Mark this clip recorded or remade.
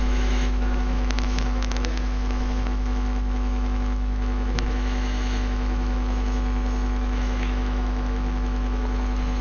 remade